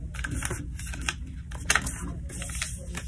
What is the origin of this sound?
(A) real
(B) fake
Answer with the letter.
A